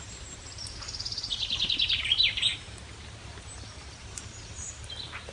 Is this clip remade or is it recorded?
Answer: remade